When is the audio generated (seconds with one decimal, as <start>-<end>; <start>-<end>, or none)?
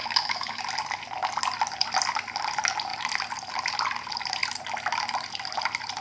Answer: 0.0-0.6